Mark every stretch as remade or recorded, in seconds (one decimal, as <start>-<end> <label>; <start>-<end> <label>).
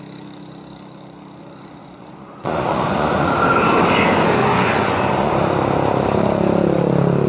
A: 0.0-1.8 recorded; 1.8-3.3 remade; 3.3-4.4 recorded; 4.4-5.3 remade; 5.3-7.3 recorded